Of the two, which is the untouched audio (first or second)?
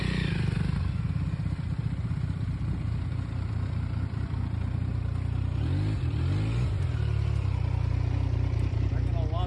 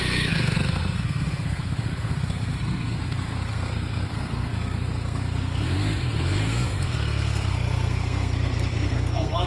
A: first